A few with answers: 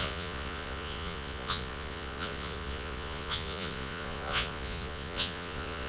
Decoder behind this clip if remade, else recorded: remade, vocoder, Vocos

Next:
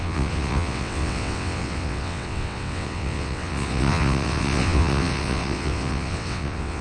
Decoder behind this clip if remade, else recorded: remade, vocoder, WaveNeXt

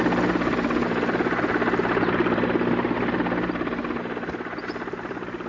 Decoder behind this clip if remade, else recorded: recorded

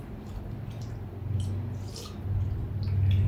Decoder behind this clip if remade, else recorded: recorded